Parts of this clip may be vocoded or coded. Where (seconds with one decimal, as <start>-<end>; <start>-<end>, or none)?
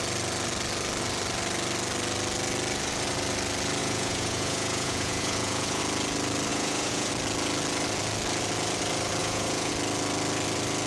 3.8-5.8; 6.5-7.1; 9.2-9.7